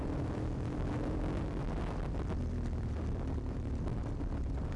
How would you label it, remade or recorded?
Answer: remade